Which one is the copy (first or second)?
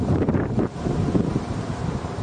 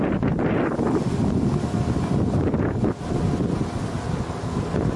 first